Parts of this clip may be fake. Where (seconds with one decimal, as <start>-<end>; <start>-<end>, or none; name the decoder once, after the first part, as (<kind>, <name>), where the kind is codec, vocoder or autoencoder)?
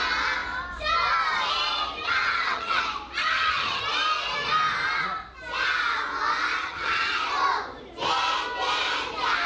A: 2.0-2.8 (vocoder, HiFi-GAN); 3.2-3.8; 6.6-7.2